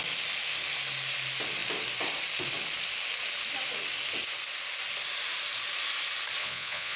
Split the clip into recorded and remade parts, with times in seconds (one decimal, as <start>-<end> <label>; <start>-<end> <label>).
0.0-6.4 recorded; 6.4-7.0 remade